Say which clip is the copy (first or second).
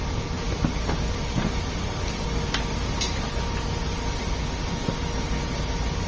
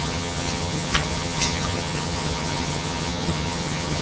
second